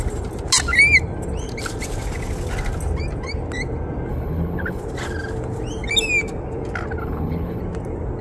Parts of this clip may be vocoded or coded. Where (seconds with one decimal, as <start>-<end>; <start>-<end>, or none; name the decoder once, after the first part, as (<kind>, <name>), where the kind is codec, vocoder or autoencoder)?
4.1-4.8 (codec, HILCodec); 7.0-7.6